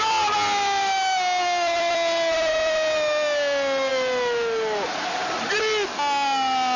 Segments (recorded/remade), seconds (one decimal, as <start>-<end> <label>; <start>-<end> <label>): 0.0-6.8 recorded